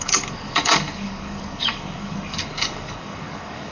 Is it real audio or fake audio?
fake